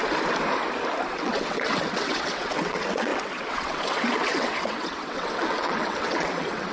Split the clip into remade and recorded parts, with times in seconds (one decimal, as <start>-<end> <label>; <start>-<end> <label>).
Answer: 0.0-1.1 recorded; 1.1-6.7 remade